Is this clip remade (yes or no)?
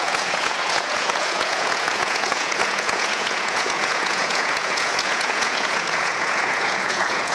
yes